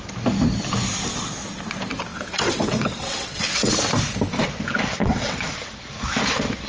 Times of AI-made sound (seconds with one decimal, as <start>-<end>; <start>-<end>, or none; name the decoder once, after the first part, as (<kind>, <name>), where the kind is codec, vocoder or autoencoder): 2.1-3.7 (vocoder, WaveNeXt); 5.0-5.5

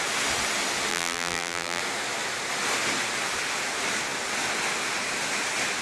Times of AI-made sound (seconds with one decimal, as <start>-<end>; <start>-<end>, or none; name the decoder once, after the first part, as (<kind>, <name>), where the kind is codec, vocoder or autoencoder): 0.9-1.8 (vocoder, BigVGAN v2)

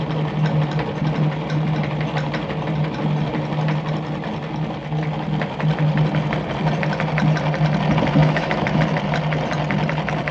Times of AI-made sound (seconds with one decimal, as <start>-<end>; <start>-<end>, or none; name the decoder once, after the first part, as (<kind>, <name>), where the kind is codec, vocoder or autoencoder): 8.2-8.8 (autoencoder, DAC-VAE)

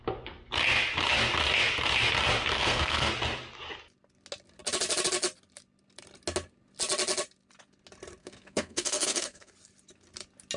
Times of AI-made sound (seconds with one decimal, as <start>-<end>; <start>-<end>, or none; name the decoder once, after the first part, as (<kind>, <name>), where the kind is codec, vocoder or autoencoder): 2.5-3.1 (codec, SNAC); 8.2-9.5

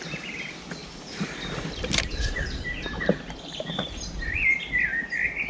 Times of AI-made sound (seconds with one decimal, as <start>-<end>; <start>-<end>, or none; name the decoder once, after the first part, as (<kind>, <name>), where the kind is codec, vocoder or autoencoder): 0.8-4.1 (vocoder, BigVGAN v2)

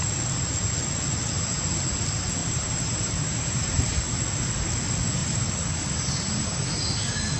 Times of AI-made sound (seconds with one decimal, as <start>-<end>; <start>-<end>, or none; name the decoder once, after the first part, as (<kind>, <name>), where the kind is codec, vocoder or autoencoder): 2.4-4.0 (vocoder, BigVGAN v2); 5.2-6.6

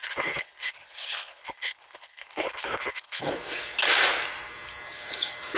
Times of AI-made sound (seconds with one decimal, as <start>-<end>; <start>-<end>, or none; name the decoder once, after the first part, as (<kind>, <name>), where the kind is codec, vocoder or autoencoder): 0.0-3.2 (codec, HILCodec)

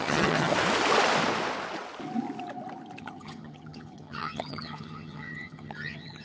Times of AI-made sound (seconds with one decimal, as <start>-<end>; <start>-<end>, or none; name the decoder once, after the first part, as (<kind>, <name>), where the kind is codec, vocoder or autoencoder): 0.0-0.5 (vocoder, HiFi-GAN); 3.0-6.2